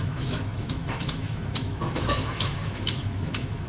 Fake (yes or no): yes